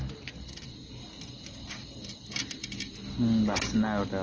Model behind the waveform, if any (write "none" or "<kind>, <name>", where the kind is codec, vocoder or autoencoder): none